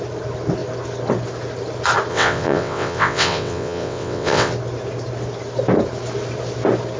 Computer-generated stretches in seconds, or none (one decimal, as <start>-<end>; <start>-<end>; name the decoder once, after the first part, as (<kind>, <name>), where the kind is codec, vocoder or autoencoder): 2.1-4.5 (vocoder, WaveNeXt)